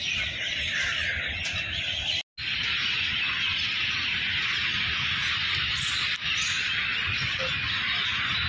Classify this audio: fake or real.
real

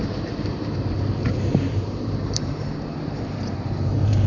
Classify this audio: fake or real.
fake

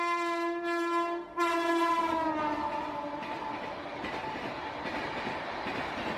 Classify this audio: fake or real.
real